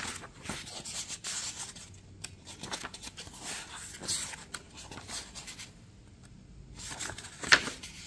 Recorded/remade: recorded